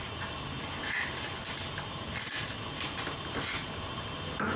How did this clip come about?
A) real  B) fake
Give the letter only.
A